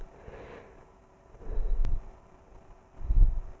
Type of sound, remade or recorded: recorded